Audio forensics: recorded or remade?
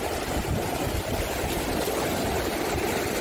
recorded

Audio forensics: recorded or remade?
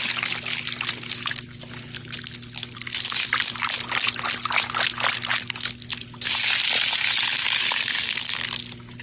recorded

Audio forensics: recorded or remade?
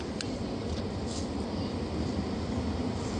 remade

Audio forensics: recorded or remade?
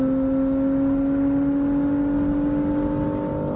recorded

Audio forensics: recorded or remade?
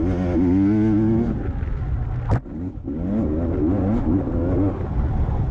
recorded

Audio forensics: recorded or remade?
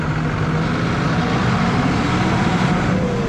recorded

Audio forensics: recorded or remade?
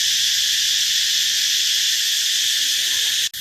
recorded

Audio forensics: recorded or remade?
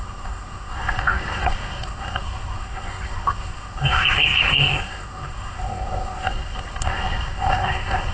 remade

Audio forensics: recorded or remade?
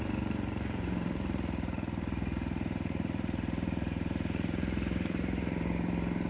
remade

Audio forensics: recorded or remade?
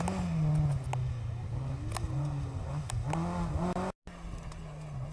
recorded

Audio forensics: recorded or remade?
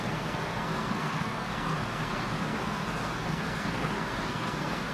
remade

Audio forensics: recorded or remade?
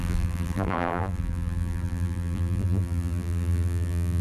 remade